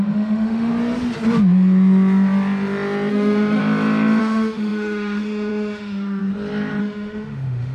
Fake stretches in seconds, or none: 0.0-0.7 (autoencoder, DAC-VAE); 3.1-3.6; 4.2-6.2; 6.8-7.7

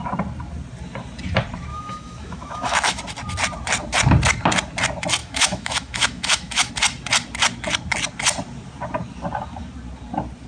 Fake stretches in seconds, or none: 1.7-3.0 (autoencoder, DAC-VAE); 5.2-6.7